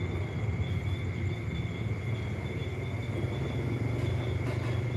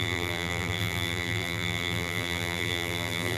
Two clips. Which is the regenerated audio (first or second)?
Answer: second